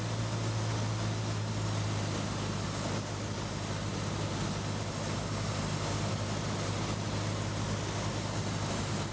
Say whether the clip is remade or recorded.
recorded